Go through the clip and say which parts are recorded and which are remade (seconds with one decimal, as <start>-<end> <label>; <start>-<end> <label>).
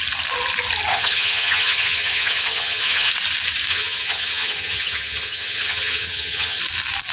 0.0-0.9 recorded; 0.9-3.1 remade; 3.1-3.7 recorded; 3.7-6.6 remade; 6.6-7.1 recorded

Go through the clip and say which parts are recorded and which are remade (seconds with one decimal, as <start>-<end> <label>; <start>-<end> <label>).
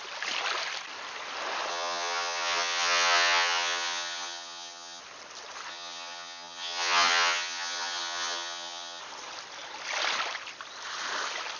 0.0-1.7 recorded; 1.7-5.0 remade; 5.0-5.7 recorded; 5.7-9.0 remade; 9.0-11.6 recorded